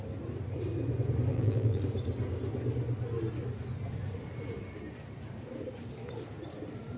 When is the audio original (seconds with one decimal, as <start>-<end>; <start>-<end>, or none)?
0.0-1.3; 1.8-7.0